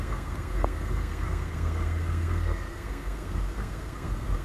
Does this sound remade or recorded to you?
remade